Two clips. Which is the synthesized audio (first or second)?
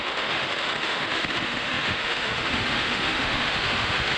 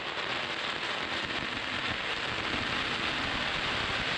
first